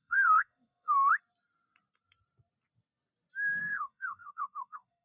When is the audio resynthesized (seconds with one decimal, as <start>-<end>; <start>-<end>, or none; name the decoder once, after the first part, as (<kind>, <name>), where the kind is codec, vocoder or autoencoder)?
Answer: 0.0-1.1 (codec, SNAC); 3.6-5.0

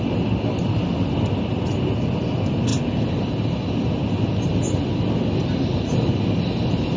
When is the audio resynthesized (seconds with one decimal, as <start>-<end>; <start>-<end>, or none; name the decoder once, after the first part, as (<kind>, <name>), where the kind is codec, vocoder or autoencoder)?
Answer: none

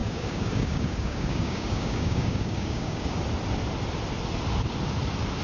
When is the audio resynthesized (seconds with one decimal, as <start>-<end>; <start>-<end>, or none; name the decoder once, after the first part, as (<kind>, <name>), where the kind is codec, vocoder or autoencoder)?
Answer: 0.0-3.2 (codec, DAC)